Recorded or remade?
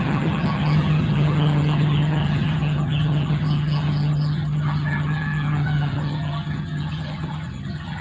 remade